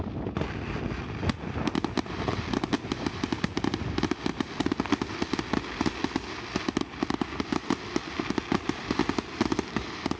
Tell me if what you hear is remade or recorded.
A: recorded